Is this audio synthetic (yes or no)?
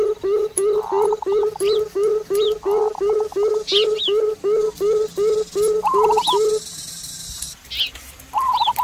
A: no